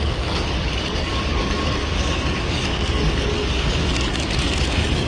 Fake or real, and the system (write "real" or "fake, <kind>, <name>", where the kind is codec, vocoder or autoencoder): fake, codec, DAC